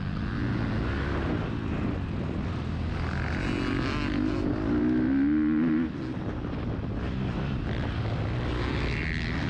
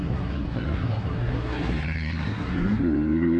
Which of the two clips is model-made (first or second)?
second